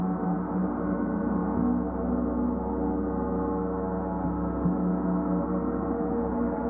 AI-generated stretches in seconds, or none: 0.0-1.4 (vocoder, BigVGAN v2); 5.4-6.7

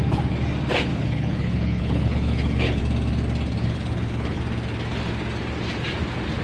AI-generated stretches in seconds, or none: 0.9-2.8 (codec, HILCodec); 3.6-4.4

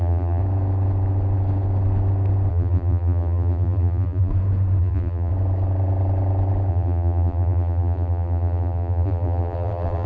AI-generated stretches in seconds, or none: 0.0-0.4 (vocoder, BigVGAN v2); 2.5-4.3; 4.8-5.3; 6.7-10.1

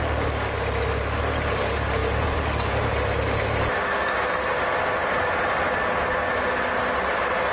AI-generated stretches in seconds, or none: none

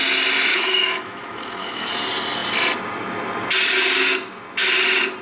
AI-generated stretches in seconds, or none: 0.5-1.9 (autoencoder, DAC-VAE)

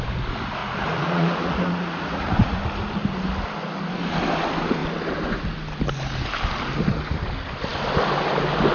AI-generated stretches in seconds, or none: 0.6-2.6 (vocoder, Vocos)